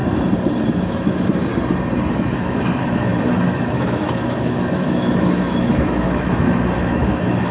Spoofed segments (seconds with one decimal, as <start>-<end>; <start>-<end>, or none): 0.8-1.5; 2.1-7.5